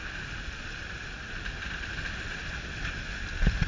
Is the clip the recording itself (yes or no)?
no